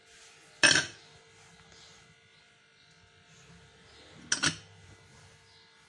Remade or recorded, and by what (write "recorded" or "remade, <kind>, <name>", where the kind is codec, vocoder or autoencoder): recorded